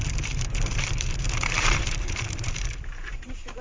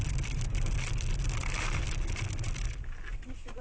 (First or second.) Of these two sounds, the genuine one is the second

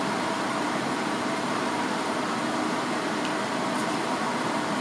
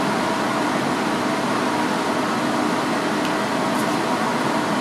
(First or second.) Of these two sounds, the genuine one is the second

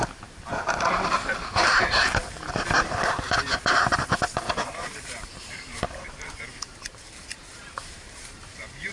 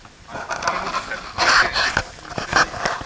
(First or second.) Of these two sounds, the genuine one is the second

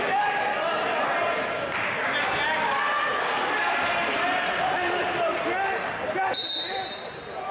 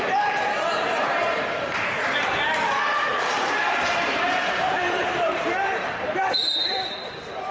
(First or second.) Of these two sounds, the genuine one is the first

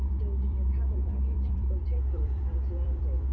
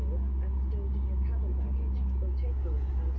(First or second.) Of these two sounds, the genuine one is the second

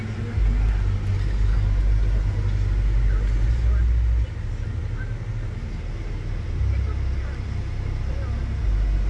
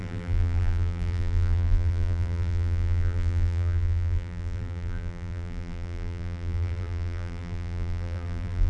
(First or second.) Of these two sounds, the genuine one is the first